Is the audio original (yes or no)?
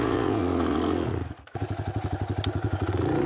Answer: no